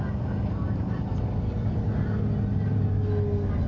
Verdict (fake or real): real